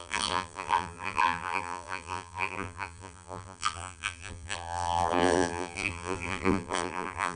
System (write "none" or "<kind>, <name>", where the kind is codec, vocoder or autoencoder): vocoder, BigVGAN v2